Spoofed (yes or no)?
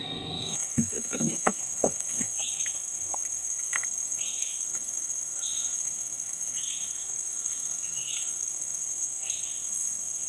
yes